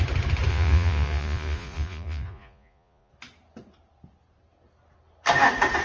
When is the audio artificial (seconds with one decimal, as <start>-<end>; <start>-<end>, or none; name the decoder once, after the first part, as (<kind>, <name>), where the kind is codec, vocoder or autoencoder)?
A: 0.5-3.1 (vocoder, Vocos)